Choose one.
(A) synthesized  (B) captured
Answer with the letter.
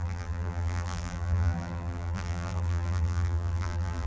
A